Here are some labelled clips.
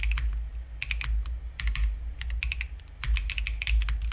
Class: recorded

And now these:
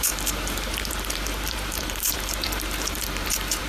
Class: remade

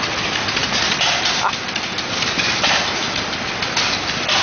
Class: recorded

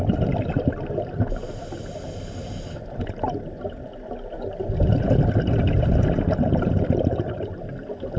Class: recorded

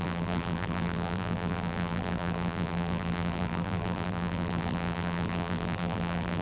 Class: remade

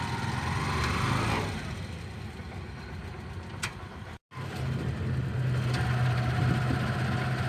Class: recorded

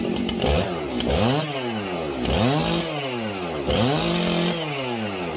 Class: recorded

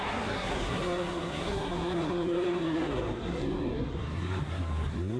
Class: remade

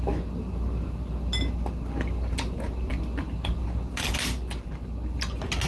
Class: recorded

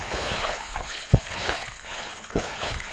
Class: remade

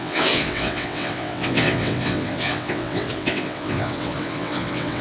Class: remade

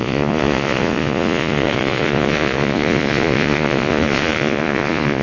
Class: remade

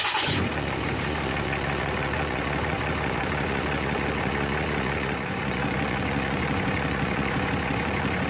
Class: remade